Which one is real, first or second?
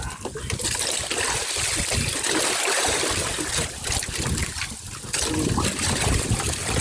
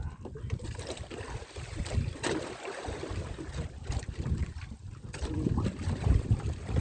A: first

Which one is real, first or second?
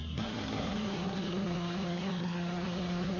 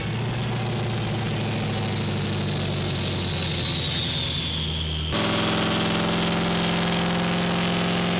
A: second